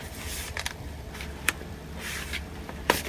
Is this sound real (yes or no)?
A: no